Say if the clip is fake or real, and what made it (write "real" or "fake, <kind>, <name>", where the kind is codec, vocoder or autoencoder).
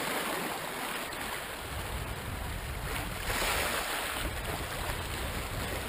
real